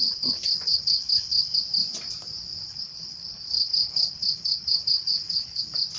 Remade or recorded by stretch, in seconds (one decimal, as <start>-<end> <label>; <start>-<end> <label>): 0.0-1.6 remade; 1.6-2.6 recorded; 2.6-5.6 remade; 5.6-6.0 recorded